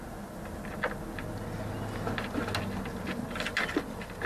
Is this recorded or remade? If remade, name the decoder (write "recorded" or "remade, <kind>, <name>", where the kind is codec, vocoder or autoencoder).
recorded